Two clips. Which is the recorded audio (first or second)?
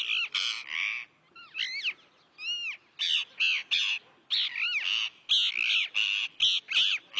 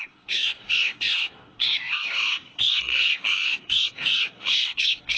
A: first